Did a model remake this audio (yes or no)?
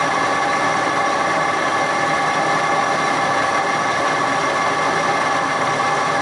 yes